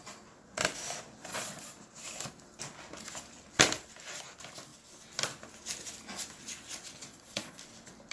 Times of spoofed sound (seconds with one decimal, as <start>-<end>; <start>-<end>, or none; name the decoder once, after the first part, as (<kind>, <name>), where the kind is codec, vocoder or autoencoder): 1.3-1.8 (vocoder, Vocos); 7.1-7.6